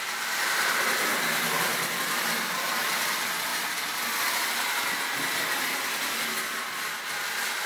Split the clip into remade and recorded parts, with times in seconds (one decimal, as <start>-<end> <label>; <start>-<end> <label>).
0.0-7.7 recorded